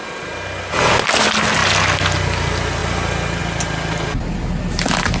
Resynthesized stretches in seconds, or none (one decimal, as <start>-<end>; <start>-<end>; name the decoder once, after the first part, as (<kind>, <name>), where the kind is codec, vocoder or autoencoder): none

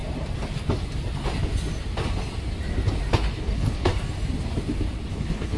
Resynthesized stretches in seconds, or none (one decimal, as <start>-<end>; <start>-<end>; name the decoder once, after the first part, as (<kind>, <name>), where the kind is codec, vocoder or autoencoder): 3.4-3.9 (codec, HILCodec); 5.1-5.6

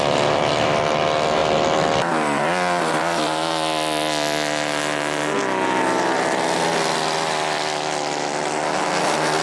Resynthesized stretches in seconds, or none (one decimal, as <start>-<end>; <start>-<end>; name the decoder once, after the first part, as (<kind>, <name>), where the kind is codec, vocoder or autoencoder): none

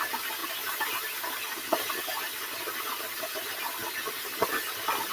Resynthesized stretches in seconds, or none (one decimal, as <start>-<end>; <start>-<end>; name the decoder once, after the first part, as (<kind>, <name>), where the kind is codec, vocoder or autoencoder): 0.0-3.8 (vocoder, BigVGAN v2)